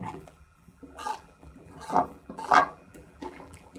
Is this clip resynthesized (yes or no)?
yes